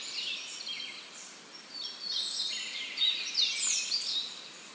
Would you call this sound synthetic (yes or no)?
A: yes